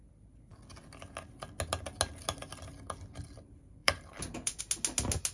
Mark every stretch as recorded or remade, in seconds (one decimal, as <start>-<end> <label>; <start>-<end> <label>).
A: 0.0-3.8 recorded; 3.8-4.6 remade; 4.6-5.3 recorded